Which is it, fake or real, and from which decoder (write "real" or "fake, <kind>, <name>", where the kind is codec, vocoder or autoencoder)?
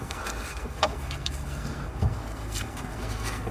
fake, codec, SNAC